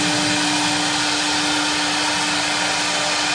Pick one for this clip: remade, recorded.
recorded